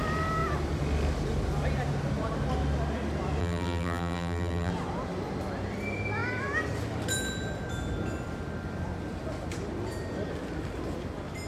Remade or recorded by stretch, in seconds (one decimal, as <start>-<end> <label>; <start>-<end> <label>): 0.0-3.4 recorded; 3.4-4.7 remade; 4.7-11.5 recorded